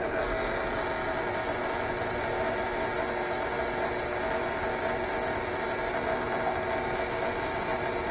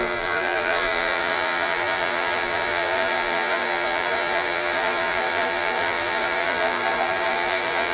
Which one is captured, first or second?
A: first